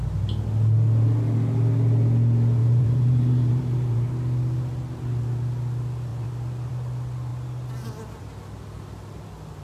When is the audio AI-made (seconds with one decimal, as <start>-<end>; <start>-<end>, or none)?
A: 2.6-4.1; 6.1-6.7